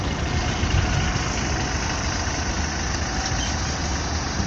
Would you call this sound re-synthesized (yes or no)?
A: no